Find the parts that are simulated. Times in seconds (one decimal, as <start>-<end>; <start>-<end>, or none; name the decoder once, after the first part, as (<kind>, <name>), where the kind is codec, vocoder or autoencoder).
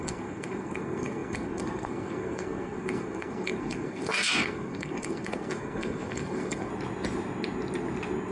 0.0-6.7 (codec, SNAC)